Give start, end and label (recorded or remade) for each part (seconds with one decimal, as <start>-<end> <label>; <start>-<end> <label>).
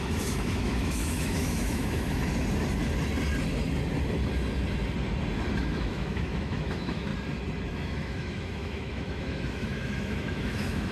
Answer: 0.0-2.2 remade; 2.2-5.6 recorded; 5.6-7.1 remade; 7.1-7.7 recorded; 7.7-10.9 remade